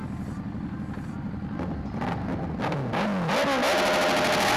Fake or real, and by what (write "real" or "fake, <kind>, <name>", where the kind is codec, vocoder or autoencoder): real